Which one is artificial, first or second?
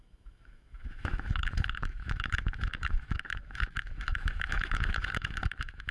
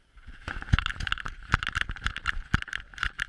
first